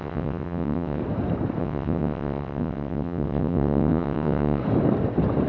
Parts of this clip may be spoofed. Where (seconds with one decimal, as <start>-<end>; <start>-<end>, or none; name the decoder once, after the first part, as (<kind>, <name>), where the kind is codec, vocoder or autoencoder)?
0.0-1.0 (vocoder, WaveNeXt); 1.6-4.6